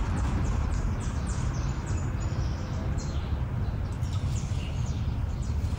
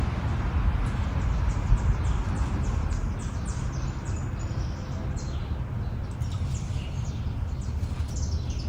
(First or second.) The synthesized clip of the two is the first